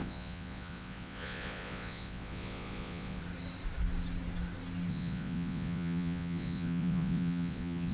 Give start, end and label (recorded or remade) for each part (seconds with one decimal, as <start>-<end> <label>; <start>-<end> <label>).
0.0-3.2 remade; 3.2-4.9 recorded; 4.9-7.9 remade